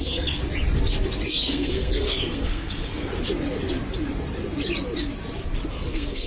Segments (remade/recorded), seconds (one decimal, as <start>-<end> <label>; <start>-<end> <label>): 0.0-0.4 remade; 0.4-1.3 recorded; 1.3-3.1 remade; 3.1-5.7 recorded; 5.7-6.3 remade